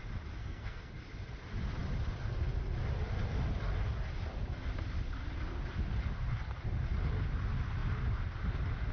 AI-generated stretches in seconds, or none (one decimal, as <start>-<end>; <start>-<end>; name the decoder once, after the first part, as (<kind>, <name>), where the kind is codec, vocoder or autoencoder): 0.4-0.9 (codec, SNAC)